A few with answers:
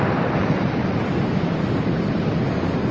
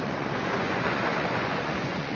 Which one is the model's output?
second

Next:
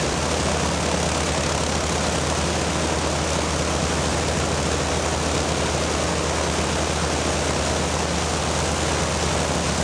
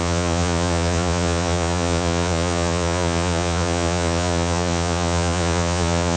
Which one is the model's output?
second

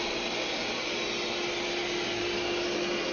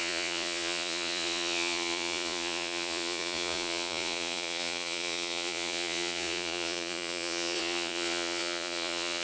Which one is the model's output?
second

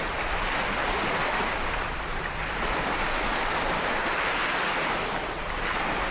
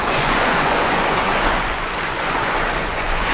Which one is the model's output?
second